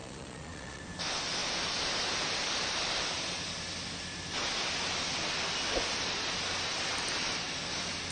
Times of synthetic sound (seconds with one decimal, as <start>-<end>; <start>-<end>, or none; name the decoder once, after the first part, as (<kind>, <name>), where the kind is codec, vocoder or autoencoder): 0.0-0.8 (vocoder, Vocos)